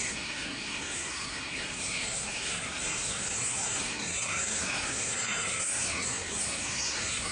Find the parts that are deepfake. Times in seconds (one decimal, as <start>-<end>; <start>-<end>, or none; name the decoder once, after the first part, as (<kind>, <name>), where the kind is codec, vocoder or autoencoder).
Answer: 0.0-7.3 (codec, SNAC)